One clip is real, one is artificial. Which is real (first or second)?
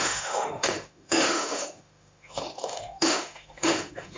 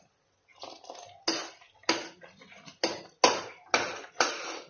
second